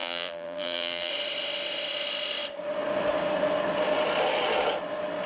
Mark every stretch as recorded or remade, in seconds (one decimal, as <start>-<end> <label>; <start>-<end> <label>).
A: 0.0-1.1 remade; 1.1-5.3 recorded